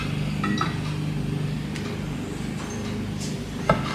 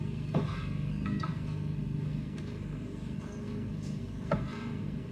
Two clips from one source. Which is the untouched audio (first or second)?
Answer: first